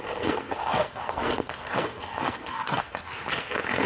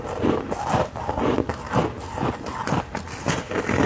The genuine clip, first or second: second